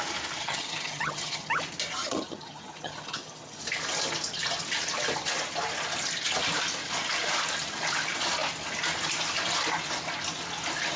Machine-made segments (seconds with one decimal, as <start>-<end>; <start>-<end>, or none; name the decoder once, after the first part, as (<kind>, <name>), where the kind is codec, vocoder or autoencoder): 0.4-1.5 (vocoder, HiFi-GAN); 2.0-3.6